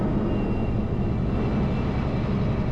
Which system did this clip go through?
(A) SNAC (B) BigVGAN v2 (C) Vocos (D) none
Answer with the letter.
D